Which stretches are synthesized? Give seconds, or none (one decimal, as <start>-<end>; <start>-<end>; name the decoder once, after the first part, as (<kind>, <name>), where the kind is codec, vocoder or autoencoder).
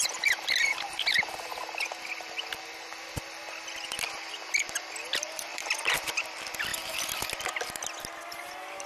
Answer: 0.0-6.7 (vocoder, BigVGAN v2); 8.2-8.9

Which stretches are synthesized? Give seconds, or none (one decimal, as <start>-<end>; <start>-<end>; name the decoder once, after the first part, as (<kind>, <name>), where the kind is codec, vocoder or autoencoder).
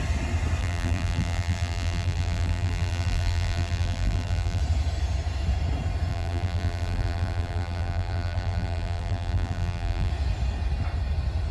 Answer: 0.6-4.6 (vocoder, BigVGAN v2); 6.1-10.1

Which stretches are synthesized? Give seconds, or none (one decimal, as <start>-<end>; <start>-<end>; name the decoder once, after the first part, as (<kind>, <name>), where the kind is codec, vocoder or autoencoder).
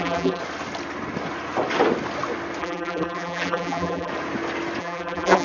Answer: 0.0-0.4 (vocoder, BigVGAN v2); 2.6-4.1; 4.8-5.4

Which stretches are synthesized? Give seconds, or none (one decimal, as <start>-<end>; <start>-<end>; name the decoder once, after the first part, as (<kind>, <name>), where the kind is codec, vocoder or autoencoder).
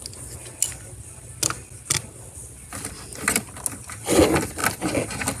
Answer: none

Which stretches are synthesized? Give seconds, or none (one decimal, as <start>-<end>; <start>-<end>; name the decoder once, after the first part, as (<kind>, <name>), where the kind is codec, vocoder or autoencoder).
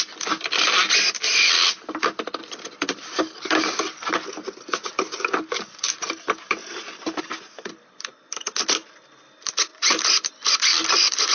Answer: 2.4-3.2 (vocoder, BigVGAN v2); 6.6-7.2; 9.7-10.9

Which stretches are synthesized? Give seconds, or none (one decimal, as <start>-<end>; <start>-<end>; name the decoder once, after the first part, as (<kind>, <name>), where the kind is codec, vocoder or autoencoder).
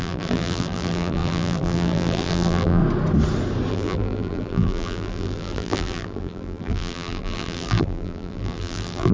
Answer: 0.0-2.8 (vocoder, BigVGAN v2); 3.7-9.1